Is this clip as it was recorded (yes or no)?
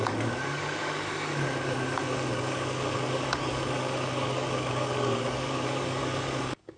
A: no